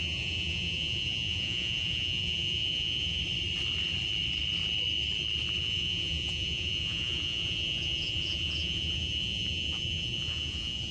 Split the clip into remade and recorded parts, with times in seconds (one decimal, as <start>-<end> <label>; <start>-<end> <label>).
0.0-3.2 remade; 3.2-5.6 recorded; 5.6-10.9 remade